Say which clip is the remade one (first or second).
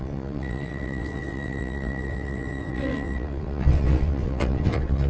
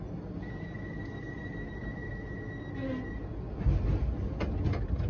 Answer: first